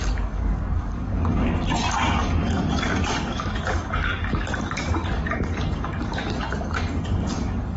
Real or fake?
fake